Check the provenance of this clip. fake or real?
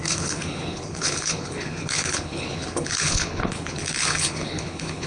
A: fake